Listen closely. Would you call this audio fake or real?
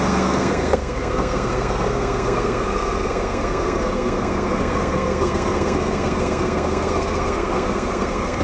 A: fake